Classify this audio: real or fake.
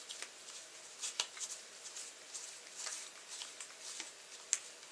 real